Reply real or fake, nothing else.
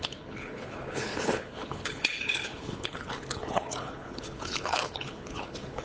fake